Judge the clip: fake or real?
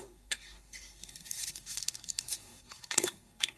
fake